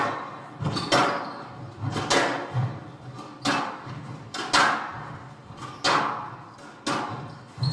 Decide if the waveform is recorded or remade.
recorded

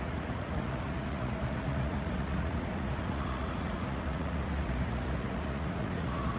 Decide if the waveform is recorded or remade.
remade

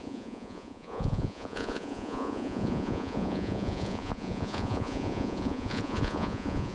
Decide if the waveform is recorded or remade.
remade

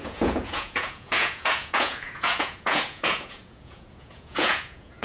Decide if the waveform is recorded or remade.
remade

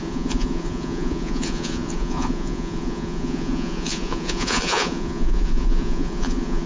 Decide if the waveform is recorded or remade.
remade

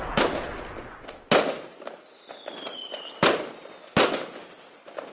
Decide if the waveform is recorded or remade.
recorded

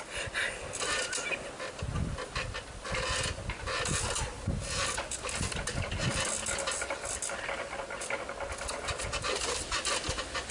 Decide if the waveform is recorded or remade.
recorded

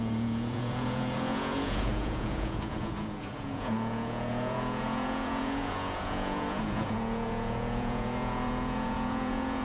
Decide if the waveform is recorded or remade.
remade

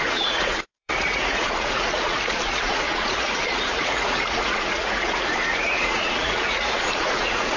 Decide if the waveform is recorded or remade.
remade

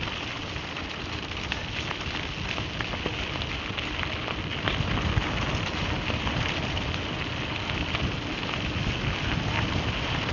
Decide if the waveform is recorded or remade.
recorded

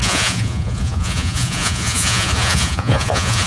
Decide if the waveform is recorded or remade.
remade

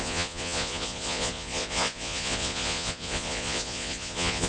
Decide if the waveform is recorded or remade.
remade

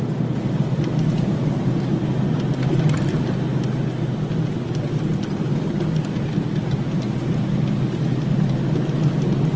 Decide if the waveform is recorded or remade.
recorded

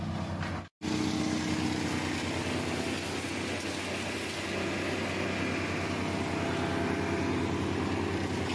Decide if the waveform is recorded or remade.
recorded